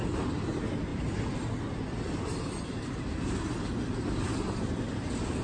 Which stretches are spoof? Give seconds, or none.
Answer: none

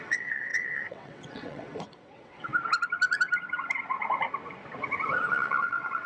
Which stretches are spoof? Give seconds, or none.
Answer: 0.0-2.5; 5.3-6.1

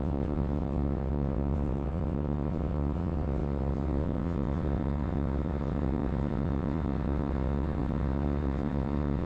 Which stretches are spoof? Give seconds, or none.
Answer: 0.0-9.3

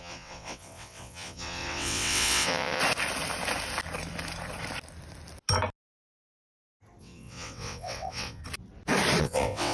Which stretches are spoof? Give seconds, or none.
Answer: 0.0-2.8; 7.0-8.4; 9.2-9.7

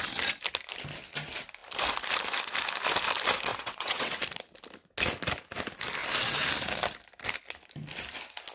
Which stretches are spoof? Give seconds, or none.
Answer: 3.5-4.1

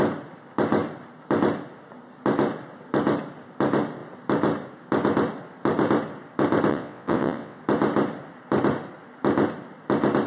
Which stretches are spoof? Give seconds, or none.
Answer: 6.7-7.6

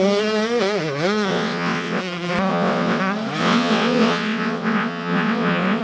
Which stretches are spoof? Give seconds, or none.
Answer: 1.3-2.0; 2.5-3.0; 3.4-5.8

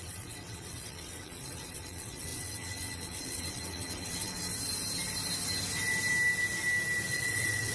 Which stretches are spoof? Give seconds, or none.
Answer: 0.0-4.5; 7.1-7.7